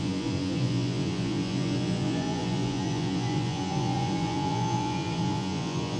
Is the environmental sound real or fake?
fake